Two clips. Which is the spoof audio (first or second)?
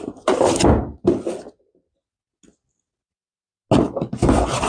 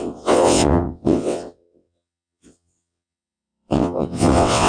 second